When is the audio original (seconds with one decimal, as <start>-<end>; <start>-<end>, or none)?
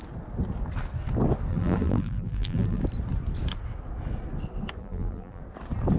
0.0-1.5; 2.8-4.8; 5.4-6.0